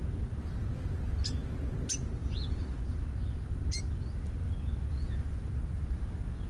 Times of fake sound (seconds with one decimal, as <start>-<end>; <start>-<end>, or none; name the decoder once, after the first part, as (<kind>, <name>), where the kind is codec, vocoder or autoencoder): 4.9-5.4 (vocoder, Vocos)